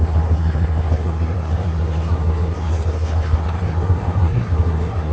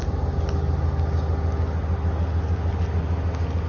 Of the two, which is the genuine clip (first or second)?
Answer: second